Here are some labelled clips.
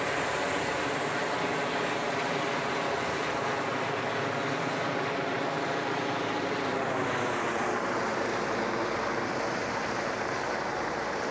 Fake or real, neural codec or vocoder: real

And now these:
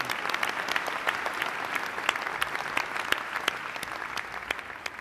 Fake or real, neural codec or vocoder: real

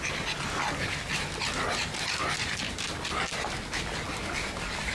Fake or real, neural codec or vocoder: real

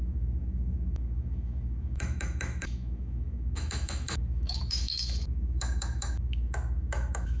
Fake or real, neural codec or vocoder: fake, autoencoder, DAC-VAE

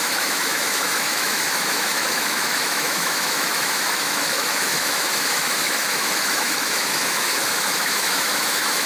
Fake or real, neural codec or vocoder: fake, autoencoder, DAC-VAE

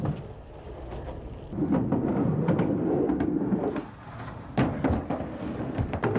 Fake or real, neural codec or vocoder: real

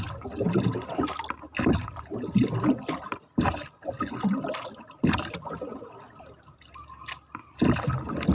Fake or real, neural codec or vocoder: real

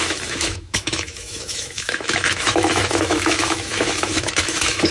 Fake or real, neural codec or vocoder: fake, autoencoder, DAC-VAE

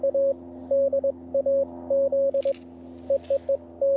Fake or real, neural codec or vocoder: real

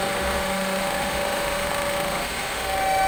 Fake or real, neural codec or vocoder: fake, autoencoder, DAC-VAE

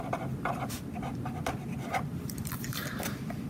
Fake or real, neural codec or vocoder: real